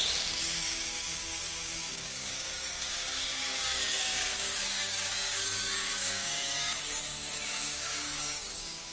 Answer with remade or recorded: remade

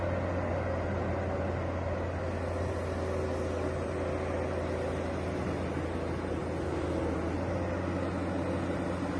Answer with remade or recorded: recorded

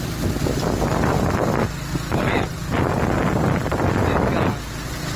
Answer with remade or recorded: recorded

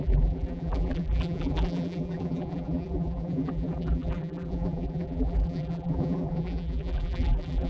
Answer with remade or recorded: remade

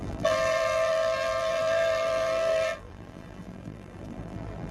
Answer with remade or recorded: remade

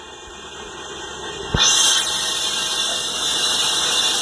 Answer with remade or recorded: recorded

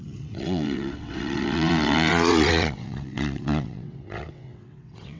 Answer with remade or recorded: remade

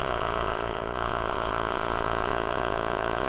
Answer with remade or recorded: remade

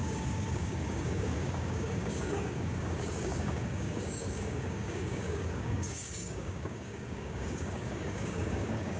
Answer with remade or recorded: remade